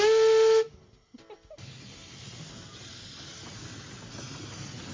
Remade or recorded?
recorded